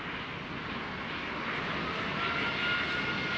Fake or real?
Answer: real